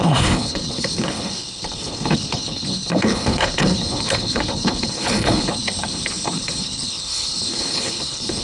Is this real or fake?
fake